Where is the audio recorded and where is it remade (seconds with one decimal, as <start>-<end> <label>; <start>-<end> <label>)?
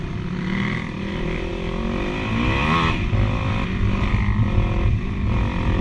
0.0-5.8 recorded